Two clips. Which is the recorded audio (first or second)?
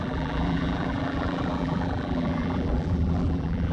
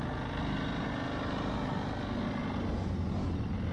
second